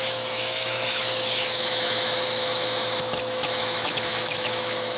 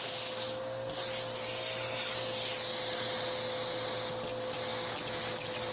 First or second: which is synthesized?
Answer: first